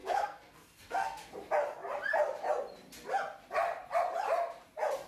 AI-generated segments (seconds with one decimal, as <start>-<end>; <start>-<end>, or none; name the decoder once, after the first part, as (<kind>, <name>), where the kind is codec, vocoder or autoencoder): 0.0-1.3 (codec, SNAC)